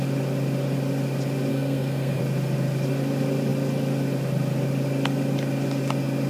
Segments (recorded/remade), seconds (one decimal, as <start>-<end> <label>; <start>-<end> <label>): 0.0-1.5 recorded; 1.5-2.2 remade; 2.2-6.3 recorded